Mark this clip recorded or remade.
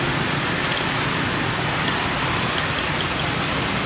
recorded